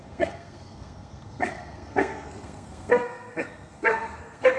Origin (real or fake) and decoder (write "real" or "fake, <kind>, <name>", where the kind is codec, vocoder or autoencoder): fake, codec, SNAC